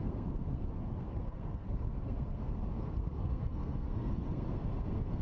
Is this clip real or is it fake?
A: fake